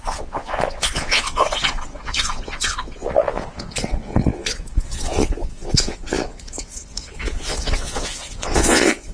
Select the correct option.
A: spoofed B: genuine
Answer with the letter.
A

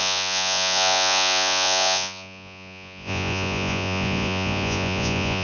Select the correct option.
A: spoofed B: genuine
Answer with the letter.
A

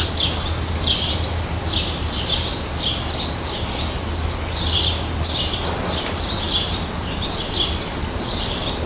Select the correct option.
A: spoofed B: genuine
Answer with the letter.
B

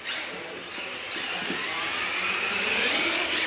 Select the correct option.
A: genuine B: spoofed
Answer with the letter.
A